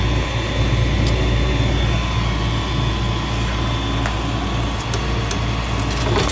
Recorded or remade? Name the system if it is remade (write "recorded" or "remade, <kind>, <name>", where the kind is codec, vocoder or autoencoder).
recorded